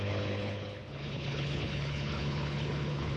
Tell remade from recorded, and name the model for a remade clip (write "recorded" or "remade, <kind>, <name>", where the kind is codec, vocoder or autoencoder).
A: remade, codec, HILCodec